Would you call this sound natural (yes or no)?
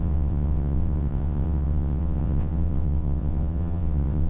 no